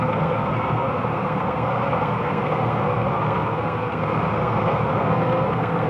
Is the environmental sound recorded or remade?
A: remade